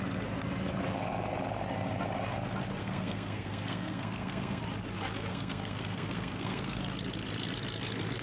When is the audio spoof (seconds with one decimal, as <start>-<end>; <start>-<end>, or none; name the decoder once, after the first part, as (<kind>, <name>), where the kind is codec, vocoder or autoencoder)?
2.8-4.6 (codec, SNAC); 5.3-6.8

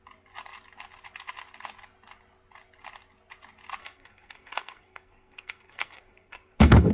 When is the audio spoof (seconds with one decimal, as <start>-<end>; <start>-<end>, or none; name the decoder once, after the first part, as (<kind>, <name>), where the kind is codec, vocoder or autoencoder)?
3.8-6.9 (codec, SNAC)

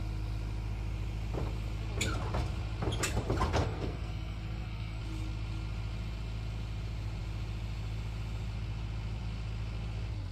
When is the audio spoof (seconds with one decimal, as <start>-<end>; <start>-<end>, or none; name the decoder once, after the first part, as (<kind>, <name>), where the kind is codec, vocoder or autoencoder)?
3.6-5.0 (codec, SNAC)

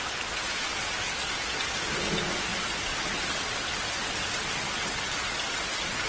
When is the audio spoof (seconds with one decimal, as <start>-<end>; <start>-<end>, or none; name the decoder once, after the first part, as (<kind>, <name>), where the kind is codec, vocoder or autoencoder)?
none

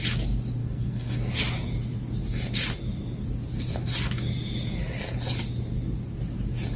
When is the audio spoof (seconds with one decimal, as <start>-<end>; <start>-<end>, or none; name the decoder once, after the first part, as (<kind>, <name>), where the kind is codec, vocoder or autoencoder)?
0.6-1.3 (codec, SNAC)

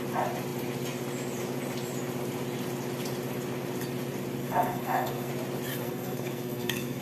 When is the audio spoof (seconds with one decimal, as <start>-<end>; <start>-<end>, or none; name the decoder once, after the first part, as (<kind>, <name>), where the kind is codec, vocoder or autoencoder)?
4.4-5.3 (codec, SNAC); 5.7-7.0

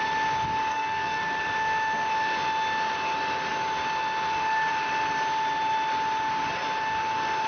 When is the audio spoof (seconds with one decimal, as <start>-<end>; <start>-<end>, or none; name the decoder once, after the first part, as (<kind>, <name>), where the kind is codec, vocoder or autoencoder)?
0.7-1.2 (codec, SNAC)